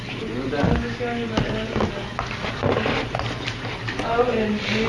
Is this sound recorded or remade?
recorded